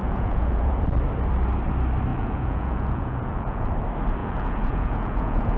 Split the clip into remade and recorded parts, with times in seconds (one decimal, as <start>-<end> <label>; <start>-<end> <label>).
0.0-0.8 remade; 0.8-2.1 recorded; 2.1-3.7 remade; 3.7-4.2 recorded; 4.2-5.6 remade